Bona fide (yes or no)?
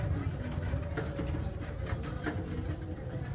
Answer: yes